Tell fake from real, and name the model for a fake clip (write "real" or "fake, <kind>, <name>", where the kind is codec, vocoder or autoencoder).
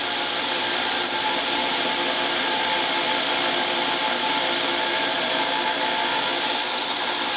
real